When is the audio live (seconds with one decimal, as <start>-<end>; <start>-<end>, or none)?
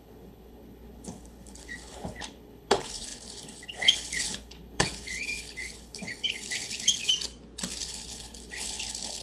7.1-7.8